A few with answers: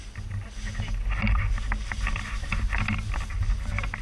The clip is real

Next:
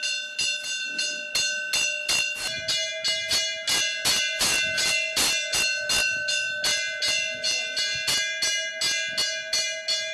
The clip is real